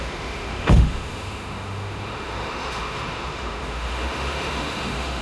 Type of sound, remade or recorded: remade